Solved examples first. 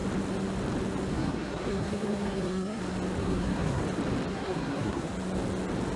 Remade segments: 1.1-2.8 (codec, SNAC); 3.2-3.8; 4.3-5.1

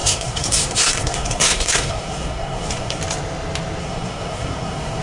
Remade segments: 0.0-3.0 (codec, SNAC); 3.8-5.0

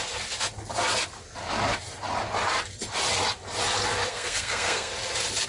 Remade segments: 4.1-4.9 (codec, SNAC)